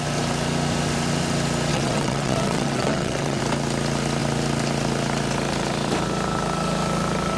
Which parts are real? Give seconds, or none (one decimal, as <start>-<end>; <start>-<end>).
0.0-1.7; 3.4-7.4